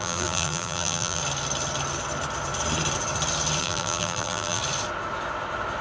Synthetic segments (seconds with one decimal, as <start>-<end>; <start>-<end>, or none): 0.0-1.2; 3.6-4.6